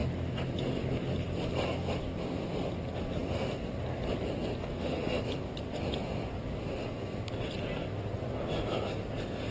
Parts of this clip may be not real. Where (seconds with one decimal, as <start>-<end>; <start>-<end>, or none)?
4.7-5.2